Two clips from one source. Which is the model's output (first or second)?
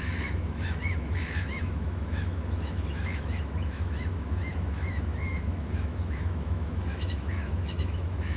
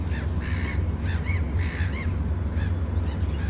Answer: first